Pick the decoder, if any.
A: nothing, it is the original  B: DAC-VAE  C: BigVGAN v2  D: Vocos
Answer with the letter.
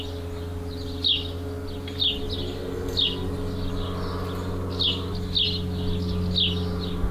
A